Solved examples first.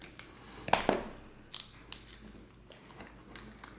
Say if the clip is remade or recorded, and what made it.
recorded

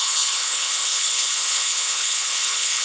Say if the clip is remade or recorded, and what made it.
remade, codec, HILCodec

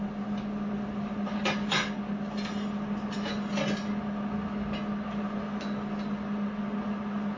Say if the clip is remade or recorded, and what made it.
recorded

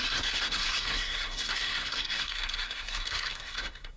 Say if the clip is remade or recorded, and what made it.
remade, codec, SNAC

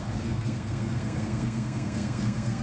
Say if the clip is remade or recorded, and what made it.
remade, codec, SNAC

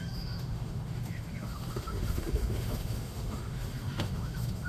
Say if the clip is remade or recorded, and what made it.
remade, autoencoder, DAC-VAE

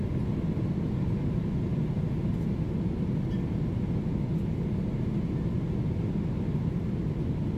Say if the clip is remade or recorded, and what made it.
recorded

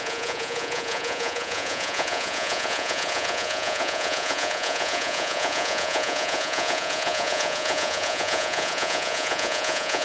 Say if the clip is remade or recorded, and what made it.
remade, vocoder, Vocos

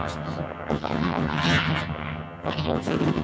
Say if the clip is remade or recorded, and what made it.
remade, vocoder, HiFi-GAN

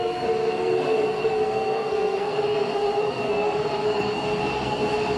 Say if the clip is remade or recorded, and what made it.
remade, codec, SNAC